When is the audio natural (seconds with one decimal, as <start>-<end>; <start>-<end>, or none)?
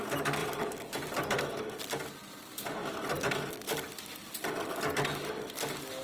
0.0-0.4; 1.4-2.8; 4.8-6.0